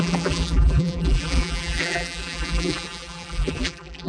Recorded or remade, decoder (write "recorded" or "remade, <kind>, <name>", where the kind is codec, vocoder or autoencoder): remade, vocoder, BigVGAN v2